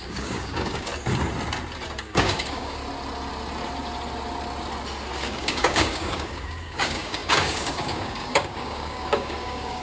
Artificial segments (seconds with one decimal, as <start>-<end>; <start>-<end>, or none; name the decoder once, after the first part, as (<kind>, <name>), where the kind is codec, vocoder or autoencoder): 0.0-0.9 (codec, DAC); 2.0-2.8; 5.2-9.8